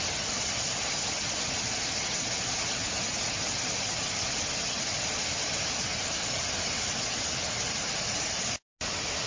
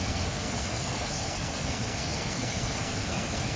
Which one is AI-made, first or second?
second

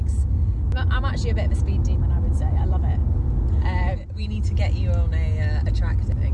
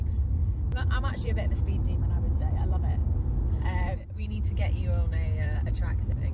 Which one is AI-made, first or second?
second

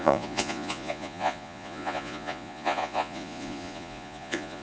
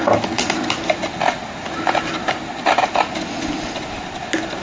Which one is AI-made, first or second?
first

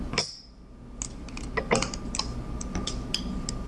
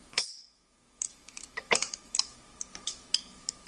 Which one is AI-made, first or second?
second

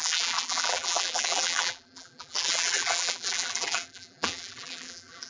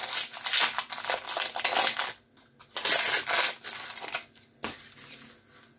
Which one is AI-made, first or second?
first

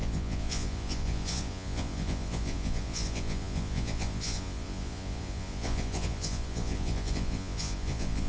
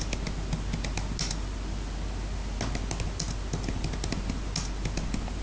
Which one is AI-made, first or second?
first